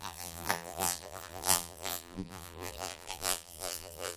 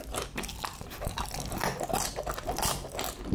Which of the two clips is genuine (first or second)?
second